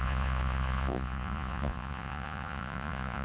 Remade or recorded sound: remade